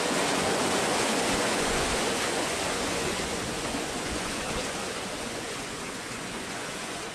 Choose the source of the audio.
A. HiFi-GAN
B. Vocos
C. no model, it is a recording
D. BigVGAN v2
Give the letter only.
B